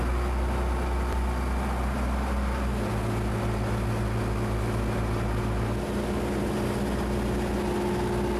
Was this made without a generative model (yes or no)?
yes